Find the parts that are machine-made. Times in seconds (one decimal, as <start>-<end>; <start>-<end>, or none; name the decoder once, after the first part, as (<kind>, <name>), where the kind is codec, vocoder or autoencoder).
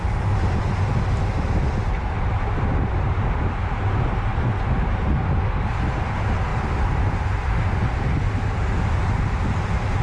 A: none